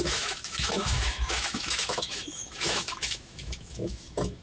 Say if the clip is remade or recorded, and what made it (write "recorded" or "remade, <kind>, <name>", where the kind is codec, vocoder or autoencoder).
remade, autoencoder, DAC-VAE